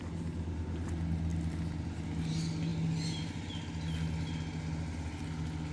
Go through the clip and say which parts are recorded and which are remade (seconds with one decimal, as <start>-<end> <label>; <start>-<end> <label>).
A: 0.0-5.7 recorded